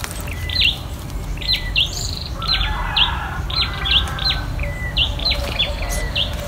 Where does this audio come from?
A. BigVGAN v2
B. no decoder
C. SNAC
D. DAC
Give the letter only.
A